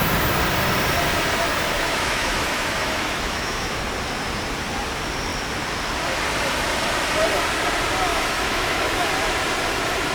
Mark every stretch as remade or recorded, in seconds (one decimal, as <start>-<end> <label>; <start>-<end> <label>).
0.0-1.5 recorded; 1.5-3.8 remade; 3.8-8.1 recorded; 8.1-9.1 remade; 9.1-10.1 recorded